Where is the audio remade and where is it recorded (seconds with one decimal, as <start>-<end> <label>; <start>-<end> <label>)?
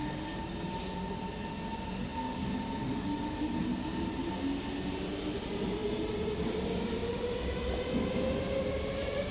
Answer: 0.0-9.3 recorded